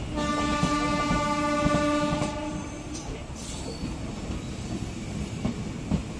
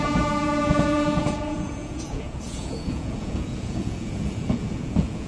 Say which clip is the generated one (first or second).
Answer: second